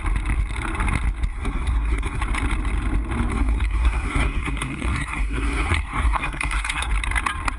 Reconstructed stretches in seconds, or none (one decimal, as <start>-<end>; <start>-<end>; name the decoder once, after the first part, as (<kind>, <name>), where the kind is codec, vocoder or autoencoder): 1.3-2.2 (codec, SNAC); 3.3-6.9